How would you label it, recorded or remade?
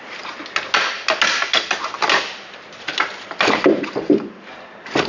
recorded